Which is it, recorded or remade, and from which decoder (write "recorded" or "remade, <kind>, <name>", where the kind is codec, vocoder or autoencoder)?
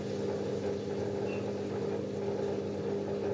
recorded